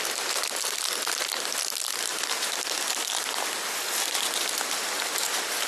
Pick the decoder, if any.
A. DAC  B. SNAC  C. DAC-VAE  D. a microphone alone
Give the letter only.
D